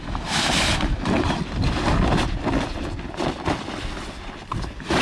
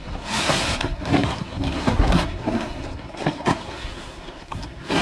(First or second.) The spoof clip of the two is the second